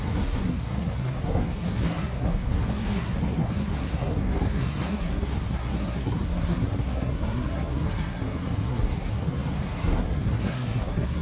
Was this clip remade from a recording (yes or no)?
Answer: yes